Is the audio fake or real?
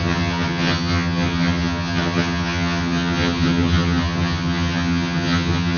fake